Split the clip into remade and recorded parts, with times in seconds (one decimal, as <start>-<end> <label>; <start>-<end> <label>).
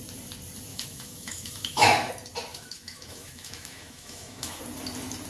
0.0-0.7 recorded; 0.7-2.1 remade; 2.1-2.5 recorded; 2.5-4.6 remade; 4.6-5.3 recorded